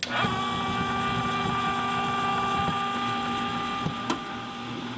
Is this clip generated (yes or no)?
no